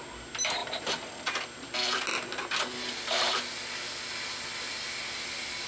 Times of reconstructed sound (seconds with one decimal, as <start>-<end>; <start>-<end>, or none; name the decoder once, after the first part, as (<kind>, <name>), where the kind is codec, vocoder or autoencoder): none